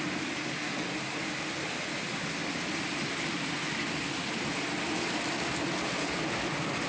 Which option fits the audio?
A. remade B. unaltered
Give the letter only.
B